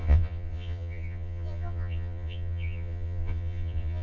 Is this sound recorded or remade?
remade